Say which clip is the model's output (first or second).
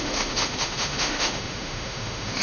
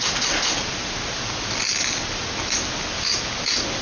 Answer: first